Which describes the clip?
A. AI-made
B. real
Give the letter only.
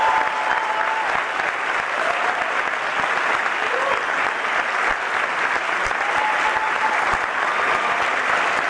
B